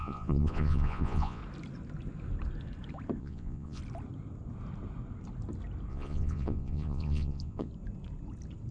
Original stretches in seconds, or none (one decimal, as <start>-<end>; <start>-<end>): 1.4-3.2; 3.8-5.9; 7.7-8.7